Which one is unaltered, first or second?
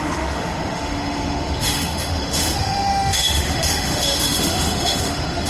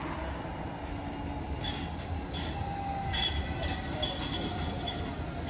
second